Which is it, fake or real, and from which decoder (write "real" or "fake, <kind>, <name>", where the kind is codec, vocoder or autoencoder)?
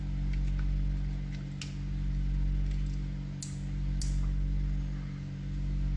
real